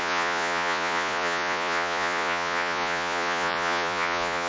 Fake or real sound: fake